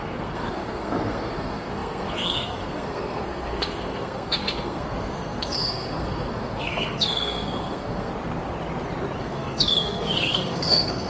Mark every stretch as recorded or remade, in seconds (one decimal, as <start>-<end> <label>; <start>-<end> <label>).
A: 0.0-8.1 remade; 8.1-9.2 recorded; 9.2-11.1 remade